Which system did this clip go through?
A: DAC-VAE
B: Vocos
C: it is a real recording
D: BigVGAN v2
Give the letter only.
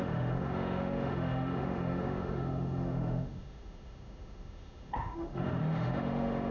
A